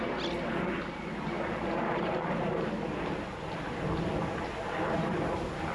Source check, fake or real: real